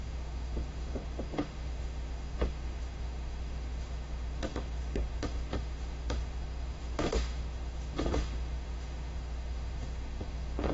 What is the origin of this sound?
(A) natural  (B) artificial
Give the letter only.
B